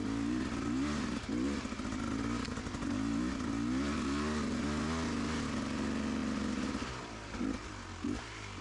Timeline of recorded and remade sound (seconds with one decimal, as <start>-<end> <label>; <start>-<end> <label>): 0.0-8.6 recorded